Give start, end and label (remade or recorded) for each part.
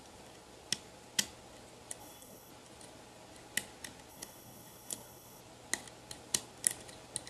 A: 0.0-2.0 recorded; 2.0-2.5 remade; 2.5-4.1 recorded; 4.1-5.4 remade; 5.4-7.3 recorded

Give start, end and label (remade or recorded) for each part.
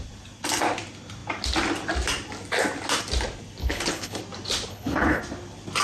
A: 0.0-3.6 recorded; 3.6-4.2 remade; 4.2-4.7 recorded; 4.7-5.2 remade; 5.2-5.8 recorded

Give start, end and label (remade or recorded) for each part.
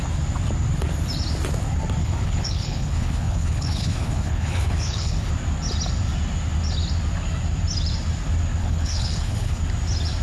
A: 0.0-2.0 recorded; 2.0-5.3 remade; 5.3-8.6 recorded; 8.6-9.6 remade; 9.6-10.2 recorded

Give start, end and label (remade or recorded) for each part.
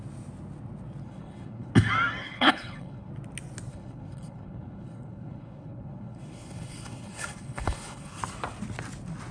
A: 0.0-1.0 recorded; 1.0-1.7 remade; 1.7-2.2 recorded; 2.2-3.1 remade; 3.1-3.7 recorded; 3.7-8.2 remade; 8.2-9.3 recorded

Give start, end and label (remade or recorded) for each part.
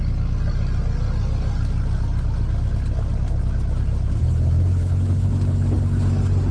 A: 0.0-4.8 recorded; 4.8-5.3 remade; 5.3-6.5 recorded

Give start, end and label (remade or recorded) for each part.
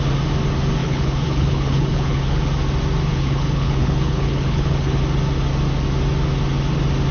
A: 0.0-0.8 recorded; 0.8-2.4 remade; 2.4-3.1 recorded; 3.1-5.0 remade; 5.0-7.1 recorded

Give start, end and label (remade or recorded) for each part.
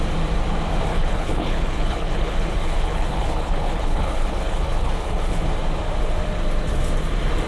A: 0.0-0.9 recorded; 0.9-5.4 remade; 5.4-7.5 recorded